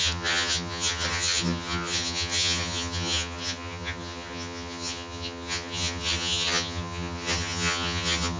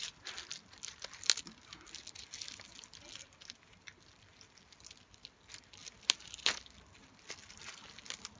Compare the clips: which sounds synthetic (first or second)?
first